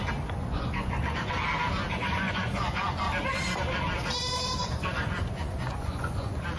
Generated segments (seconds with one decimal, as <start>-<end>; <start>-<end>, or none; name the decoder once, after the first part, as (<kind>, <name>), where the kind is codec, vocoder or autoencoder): 0.4-1.3 (vocoder, Vocos); 1.9-2.8; 4.6-6.6